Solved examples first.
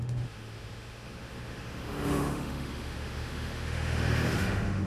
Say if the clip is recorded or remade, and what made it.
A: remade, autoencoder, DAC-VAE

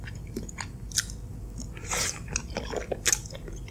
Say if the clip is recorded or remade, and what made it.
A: recorded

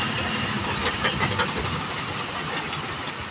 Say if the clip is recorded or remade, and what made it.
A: recorded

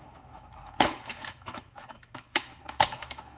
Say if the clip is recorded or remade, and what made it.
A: remade, autoencoder, DAC-VAE